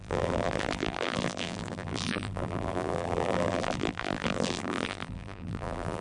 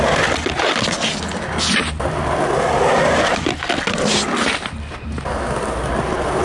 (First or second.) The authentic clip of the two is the second